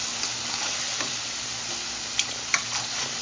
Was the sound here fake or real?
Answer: real